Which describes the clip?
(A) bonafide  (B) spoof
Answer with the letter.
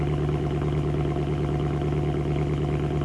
A